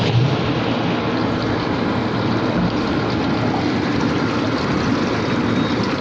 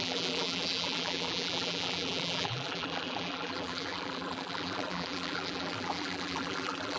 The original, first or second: first